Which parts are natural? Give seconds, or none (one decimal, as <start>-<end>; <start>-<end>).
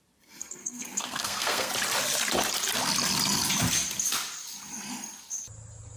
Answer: 0.0-0.6; 1.7-6.0